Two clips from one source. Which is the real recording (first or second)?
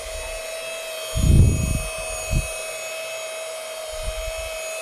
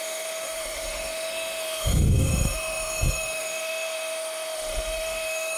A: first